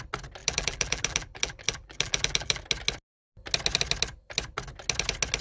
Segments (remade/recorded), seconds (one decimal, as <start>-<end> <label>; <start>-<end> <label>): 0.0-0.4 recorded; 0.4-2.6 remade; 2.6-5.4 recorded

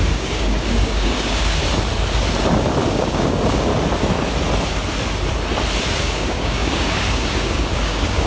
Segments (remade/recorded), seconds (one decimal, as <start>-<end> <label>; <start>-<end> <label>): 0.0-1.6 remade; 1.6-2.9 recorded; 2.9-3.7 remade; 3.7-6.0 recorded; 6.0-8.3 remade

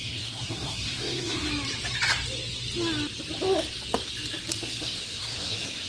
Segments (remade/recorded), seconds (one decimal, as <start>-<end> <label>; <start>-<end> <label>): 0.0-1.5 remade; 1.5-4.6 recorded; 4.6-5.9 remade

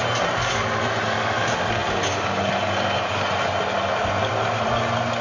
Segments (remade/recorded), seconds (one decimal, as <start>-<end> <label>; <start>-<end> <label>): 0.0-5.2 recorded

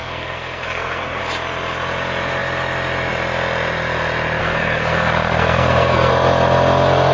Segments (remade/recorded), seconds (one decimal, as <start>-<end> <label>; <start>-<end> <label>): 0.0-1.2 remade; 1.2-4.4 recorded; 4.4-6.1 remade; 6.1-7.1 recorded

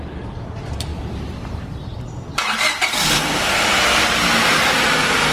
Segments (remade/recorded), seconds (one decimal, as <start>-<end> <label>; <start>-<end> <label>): 0.0-0.9 recorded; 0.9-3.7 remade; 3.7-5.3 recorded

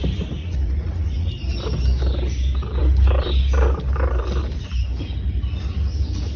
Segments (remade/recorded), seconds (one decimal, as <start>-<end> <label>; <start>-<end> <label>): 0.0-0.4 recorded; 0.4-1.3 remade; 1.3-6.4 recorded